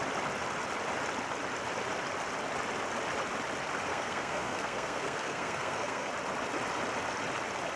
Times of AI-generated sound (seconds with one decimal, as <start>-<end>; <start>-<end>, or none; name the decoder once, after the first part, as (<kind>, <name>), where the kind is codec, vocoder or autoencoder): 3.9-6.1 (codec, SNAC)